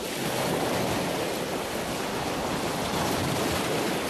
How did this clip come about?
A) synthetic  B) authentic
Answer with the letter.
B